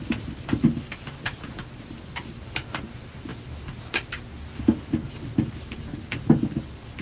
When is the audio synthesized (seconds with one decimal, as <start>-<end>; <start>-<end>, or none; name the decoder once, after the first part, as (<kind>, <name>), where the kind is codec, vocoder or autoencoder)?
none